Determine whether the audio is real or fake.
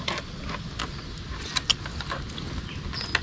real